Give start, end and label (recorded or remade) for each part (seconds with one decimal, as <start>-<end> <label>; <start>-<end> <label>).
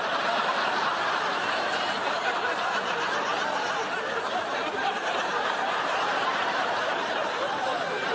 0.0-3.3 remade; 3.3-4.9 recorded; 4.9-8.1 remade